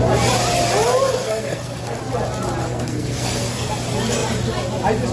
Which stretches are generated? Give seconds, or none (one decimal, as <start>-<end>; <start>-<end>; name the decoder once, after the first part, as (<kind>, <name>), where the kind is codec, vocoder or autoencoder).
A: 1.2-2.0 (codec, SNAC); 2.6-3.7